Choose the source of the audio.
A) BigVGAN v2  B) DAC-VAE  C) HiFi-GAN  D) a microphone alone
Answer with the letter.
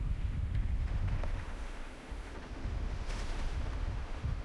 B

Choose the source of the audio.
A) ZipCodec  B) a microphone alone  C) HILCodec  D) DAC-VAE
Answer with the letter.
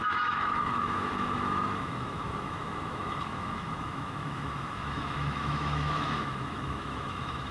D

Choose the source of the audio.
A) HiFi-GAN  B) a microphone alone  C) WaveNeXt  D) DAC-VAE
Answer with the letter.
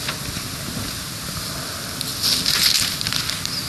B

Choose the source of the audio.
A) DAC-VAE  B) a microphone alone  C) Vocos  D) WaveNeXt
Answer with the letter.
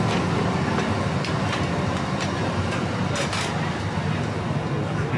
B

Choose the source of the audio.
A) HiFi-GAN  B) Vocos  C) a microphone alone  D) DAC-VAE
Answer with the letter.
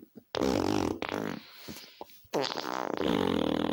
C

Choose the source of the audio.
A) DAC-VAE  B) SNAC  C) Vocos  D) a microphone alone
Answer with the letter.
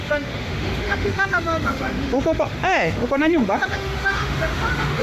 A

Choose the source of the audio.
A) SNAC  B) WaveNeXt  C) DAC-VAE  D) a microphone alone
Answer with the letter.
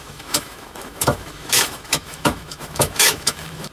C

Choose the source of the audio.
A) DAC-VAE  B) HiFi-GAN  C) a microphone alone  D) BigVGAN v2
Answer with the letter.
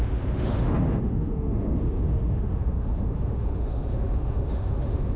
A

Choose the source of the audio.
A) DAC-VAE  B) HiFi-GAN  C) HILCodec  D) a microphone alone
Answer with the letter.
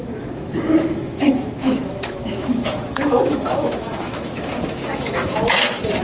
A